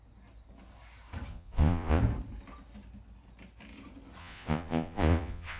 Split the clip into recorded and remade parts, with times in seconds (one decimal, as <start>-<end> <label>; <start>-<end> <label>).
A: 0.0-1.3 recorded; 1.3-2.0 remade; 2.0-4.2 recorded; 4.2-5.6 remade